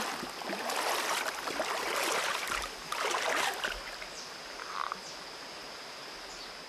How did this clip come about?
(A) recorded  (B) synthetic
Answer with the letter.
A